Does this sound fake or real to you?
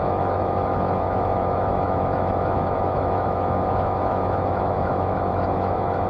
fake